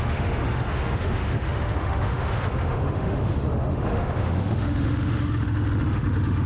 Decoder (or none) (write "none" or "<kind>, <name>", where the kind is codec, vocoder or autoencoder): autoencoder, DAC-VAE